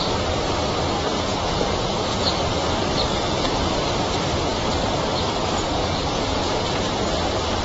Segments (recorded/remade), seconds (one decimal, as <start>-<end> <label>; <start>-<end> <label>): 0.0-1.1 recorded; 1.1-2.4 remade; 2.4-5.8 recorded; 5.8-6.9 remade; 6.9-7.6 recorded